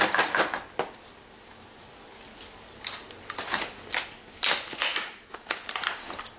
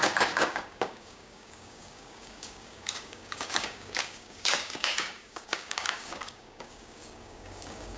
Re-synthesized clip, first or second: second